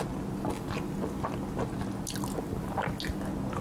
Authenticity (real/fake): real